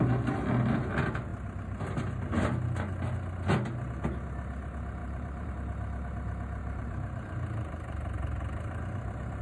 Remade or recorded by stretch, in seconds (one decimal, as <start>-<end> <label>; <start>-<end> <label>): 0.0-5.0 recorded; 5.0-5.5 remade; 5.5-6.6 recorded; 6.6-8.8 remade; 8.8-9.4 recorded